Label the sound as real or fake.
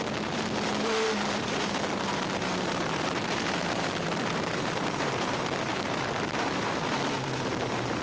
fake